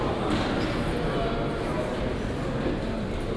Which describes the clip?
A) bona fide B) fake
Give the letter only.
A